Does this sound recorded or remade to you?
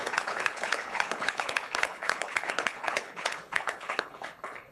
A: remade